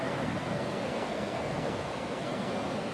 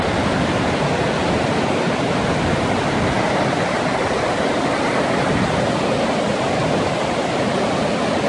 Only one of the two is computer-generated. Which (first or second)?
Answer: first